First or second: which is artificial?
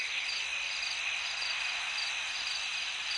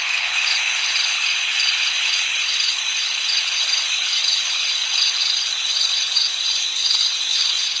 second